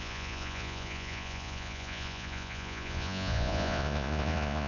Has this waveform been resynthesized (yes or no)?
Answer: yes